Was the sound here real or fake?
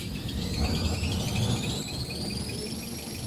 fake